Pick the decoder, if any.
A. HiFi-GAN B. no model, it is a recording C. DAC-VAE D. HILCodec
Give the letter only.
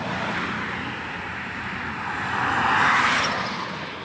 B